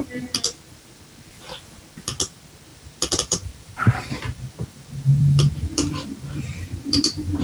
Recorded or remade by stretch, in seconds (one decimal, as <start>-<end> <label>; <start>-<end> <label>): 0.0-2.7 recorded; 2.7-7.4 remade